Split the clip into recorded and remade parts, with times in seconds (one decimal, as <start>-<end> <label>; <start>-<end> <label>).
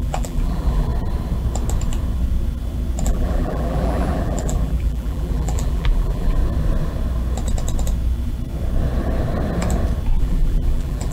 0.0-0.9 remade; 0.9-3.0 recorded; 3.0-6.4 remade; 6.4-10.2 recorded; 10.2-11.1 remade